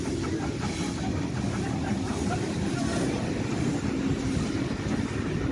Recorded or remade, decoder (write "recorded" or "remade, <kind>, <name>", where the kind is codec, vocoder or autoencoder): recorded